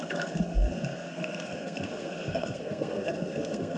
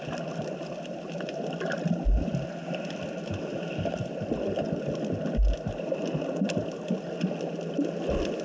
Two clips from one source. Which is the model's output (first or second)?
first